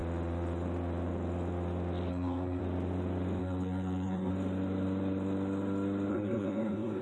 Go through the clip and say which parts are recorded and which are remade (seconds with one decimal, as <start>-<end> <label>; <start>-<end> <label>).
0.0-2.1 recorded; 2.1-2.6 remade; 2.6-3.4 recorded; 3.4-4.3 remade; 4.3-6.1 recorded; 6.1-7.0 remade